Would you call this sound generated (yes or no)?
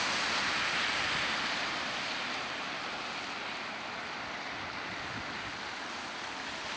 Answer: no